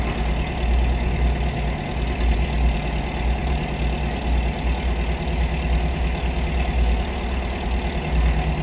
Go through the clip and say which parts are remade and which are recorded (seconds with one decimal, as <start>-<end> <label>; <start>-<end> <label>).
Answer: 0.0-8.6 recorded